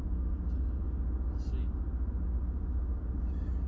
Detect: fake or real real